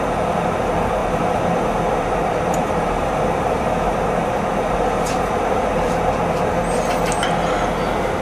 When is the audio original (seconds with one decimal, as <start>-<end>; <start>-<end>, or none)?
0.0-1.0; 5.9-8.2